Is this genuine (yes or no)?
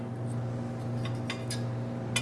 yes